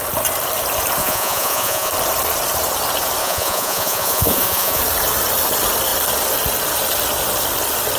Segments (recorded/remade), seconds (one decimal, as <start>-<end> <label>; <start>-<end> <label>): 0.0-1.0 recorded; 1.0-1.9 remade; 1.9-3.2 recorded; 3.2-4.8 remade; 4.8-8.0 recorded

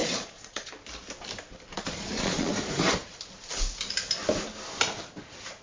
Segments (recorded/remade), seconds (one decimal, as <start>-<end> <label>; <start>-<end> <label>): 0.0-0.7 remade; 0.7-1.7 recorded; 1.7-2.5 remade; 2.5-5.6 recorded

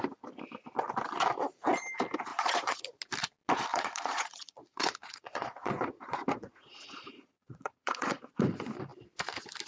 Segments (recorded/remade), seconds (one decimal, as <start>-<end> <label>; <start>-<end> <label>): 0.0-2.3 recorded; 2.3-2.8 remade; 2.8-3.7 recorded; 3.7-8.2 remade; 8.2-9.7 recorded

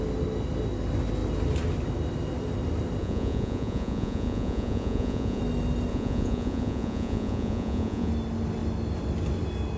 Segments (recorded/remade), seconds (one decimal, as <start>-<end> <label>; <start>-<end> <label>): 0.0-3.0 recorded; 3.0-5.4 remade; 5.4-5.9 recorded; 5.9-8.1 remade; 8.1-9.8 recorded

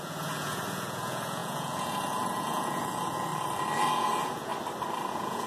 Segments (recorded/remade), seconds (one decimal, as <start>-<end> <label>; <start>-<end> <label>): 0.0-3.3 remade; 3.3-3.9 recorded; 3.9-4.5 remade; 4.5-5.1 recorded; 5.1-5.5 remade

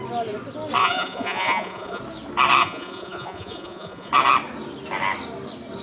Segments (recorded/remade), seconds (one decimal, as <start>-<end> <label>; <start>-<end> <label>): 0.0-0.8 recorded; 0.8-2.0 remade; 2.0-2.6 recorded; 2.6-4.1 remade; 4.1-5.8 recorded

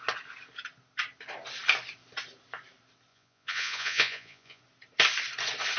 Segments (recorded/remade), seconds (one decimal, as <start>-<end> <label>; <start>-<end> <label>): 0.0-3.1 recorded; 3.1-4.6 remade; 4.6-5.8 recorded